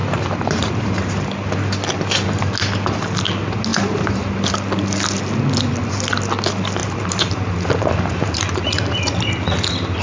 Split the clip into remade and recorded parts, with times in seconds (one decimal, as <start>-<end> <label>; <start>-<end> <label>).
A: 0.0-0.7 remade; 0.7-3.7 recorded; 3.7-4.5 remade; 4.5-6.8 recorded; 6.8-8.7 remade; 8.7-10.0 recorded